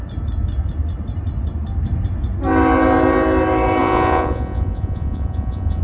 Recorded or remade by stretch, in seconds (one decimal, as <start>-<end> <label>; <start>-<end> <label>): 0.0-3.8 recorded; 3.8-5.8 remade

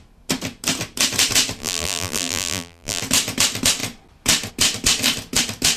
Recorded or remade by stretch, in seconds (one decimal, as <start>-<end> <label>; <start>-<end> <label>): 0.0-1.6 recorded; 1.6-3.0 remade; 3.0-5.8 recorded

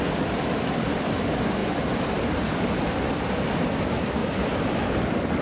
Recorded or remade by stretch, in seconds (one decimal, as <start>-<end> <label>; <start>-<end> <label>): 0.0-1.6 recorded; 1.6-3.0 remade; 3.0-4.2 recorded; 4.2-4.9 remade; 4.9-5.4 recorded

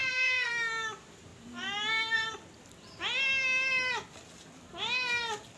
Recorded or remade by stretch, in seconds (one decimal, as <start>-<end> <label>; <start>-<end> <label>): 0.0-0.5 remade; 0.5-5.6 recorded